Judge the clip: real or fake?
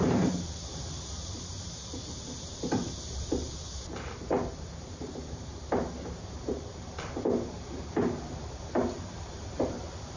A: fake